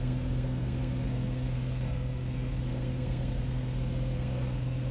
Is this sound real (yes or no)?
no